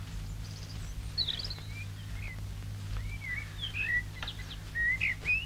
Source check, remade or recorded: recorded